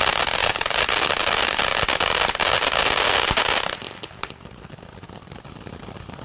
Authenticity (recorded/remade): recorded